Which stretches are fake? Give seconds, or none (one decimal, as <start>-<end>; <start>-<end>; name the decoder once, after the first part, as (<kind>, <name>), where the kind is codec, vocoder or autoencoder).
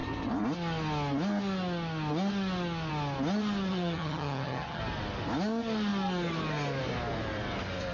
3.7-4.8 (vocoder, HiFi-GAN)